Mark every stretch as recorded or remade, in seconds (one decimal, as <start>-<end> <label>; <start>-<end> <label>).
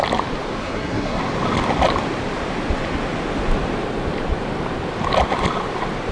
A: 0.0-0.6 recorded; 0.6-1.2 remade; 1.2-6.1 recorded